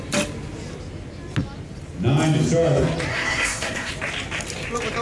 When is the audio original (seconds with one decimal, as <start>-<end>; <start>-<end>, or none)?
0.0-3.1; 3.9-5.0